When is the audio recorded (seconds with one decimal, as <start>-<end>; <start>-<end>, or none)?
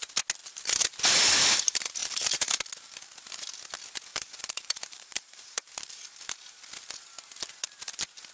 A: 0.0-0.4; 0.9-2.0; 2.6-4.1; 6.6-8.3